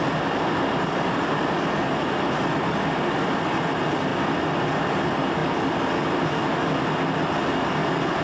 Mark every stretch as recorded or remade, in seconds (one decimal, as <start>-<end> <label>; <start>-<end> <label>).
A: 0.0-8.2 recorded